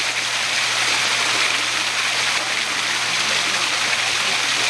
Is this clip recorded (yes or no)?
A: yes